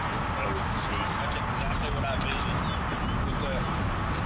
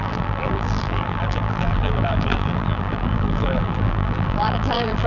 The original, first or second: first